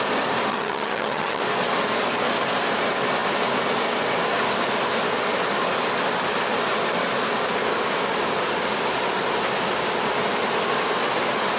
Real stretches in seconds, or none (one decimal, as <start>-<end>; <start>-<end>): 0.0-0.5; 1.4-11.6